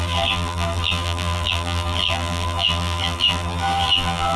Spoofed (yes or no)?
yes